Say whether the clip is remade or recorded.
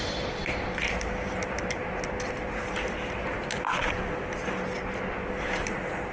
recorded